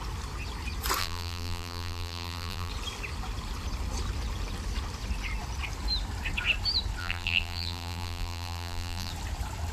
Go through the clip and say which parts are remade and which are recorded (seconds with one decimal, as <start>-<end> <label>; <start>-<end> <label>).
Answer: 0.0-1.0 recorded; 1.0-2.7 remade; 2.7-7.0 recorded; 7.0-9.1 remade; 9.1-9.7 recorded